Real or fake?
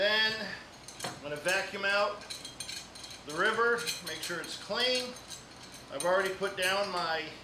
real